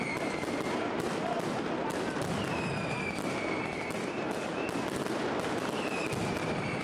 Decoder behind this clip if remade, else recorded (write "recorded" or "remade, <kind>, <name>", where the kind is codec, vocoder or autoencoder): recorded